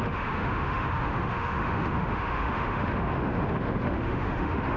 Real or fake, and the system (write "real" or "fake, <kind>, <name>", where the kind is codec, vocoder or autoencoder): fake, autoencoder, DAC-VAE